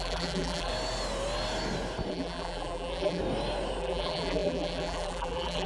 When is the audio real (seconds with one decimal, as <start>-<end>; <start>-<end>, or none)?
0.7-2.1; 3.2-3.8